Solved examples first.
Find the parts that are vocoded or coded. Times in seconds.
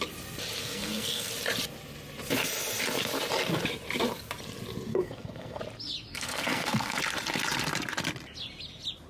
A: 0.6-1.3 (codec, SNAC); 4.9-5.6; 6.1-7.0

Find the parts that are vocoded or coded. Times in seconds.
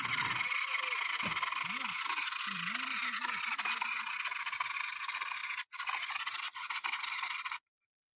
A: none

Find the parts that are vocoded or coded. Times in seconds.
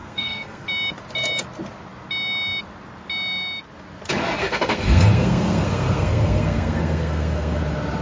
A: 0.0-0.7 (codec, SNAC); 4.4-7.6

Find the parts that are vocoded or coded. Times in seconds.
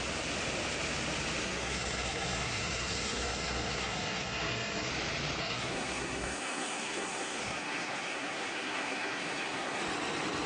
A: 1.4-4.9 (codec, SNAC); 5.4-9.8